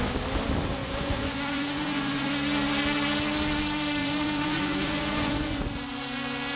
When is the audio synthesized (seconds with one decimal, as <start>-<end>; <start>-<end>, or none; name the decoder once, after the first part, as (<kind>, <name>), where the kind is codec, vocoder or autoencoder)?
0.8-2.3 (vocoder, Vocos); 4.0-5.6